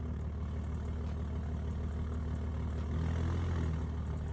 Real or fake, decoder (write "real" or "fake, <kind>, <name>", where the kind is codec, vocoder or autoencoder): real